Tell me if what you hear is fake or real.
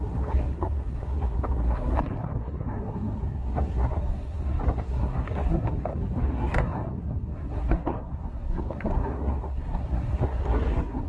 fake